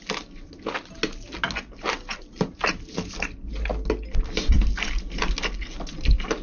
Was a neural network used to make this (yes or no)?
no